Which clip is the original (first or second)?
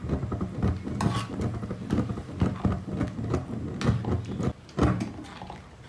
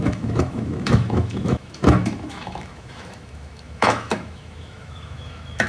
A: first